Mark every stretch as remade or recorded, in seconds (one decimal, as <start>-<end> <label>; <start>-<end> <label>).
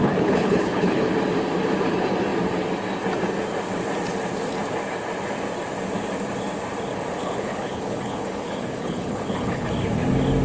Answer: 0.0-1.1 remade; 1.1-7.2 recorded; 7.2-9.7 remade; 9.7-10.4 recorded